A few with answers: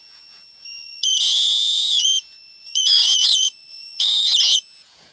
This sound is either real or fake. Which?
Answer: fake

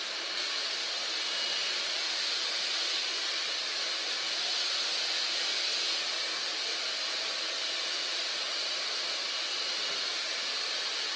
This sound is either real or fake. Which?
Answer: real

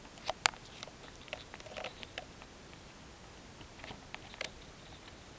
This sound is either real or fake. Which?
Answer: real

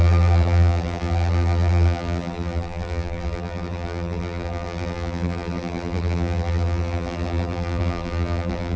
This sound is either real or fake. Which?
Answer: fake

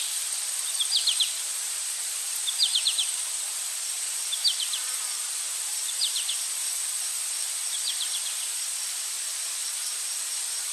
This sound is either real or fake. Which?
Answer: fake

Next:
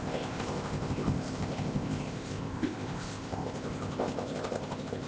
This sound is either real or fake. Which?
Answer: fake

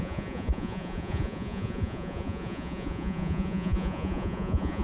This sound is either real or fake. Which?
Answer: fake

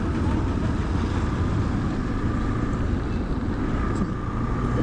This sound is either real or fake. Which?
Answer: real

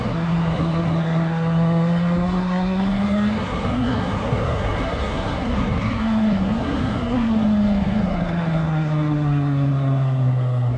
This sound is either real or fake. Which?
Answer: fake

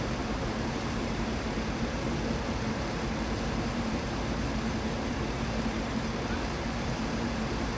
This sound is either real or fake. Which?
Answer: fake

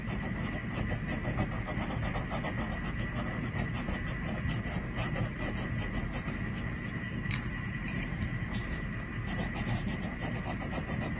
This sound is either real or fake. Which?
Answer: fake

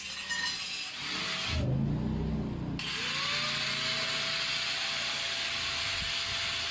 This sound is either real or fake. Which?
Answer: real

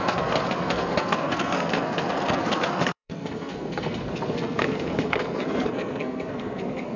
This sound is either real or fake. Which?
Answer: fake